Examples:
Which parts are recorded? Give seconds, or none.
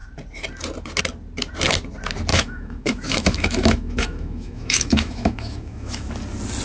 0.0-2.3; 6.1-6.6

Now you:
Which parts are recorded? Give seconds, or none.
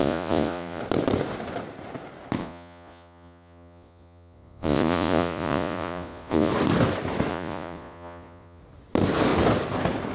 0.8-2.4; 6.5-7.3; 8.6-10.1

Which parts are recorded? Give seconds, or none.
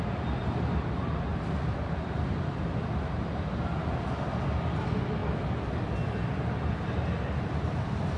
0.0-1.3; 2.1-5.2; 6.5-8.2